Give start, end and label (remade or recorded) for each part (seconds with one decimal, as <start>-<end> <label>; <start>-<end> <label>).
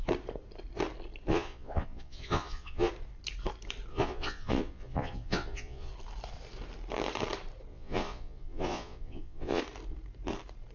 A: 0.0-1.3 recorded; 1.3-2.9 remade; 2.9-3.9 recorded; 3.9-5.9 remade; 5.9-7.7 recorded; 7.7-9.6 remade; 9.6-10.7 recorded